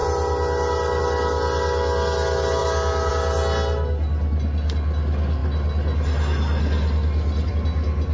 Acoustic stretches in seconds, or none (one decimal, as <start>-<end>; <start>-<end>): 0.0-8.1